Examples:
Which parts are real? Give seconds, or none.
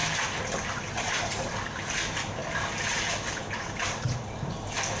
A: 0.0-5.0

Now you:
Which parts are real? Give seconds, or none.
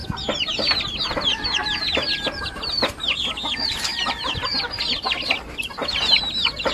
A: 0.0-6.7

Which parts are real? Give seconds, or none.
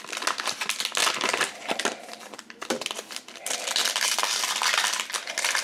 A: 0.0-5.6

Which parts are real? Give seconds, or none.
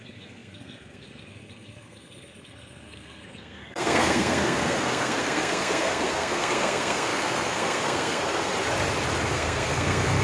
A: 8.5-9.3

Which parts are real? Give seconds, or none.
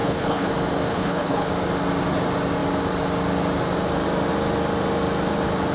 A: 0.5-0.9; 1.5-5.7